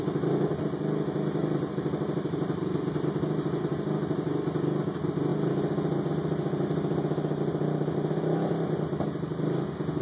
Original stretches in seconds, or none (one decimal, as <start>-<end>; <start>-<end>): 0.0-1.4; 3.2-10.0